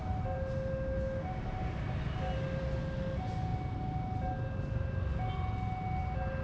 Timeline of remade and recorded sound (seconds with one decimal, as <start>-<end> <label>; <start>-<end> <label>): 0.0-6.4 recorded